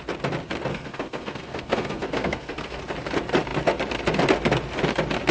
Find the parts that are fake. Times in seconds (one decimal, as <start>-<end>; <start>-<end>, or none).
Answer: 0.7-2.8